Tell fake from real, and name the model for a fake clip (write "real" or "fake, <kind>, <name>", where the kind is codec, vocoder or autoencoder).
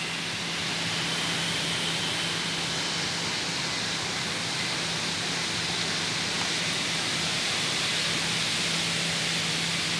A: real